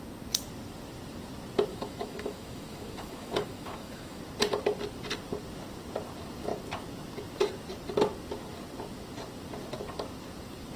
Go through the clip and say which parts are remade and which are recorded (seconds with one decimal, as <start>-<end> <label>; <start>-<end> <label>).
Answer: 0.0-1.7 recorded; 1.7-4.2 remade; 4.2-10.8 recorded